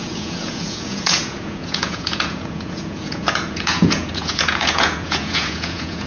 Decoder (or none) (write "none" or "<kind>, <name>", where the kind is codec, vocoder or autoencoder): vocoder, Vocos